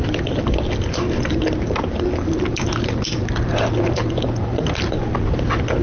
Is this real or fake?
real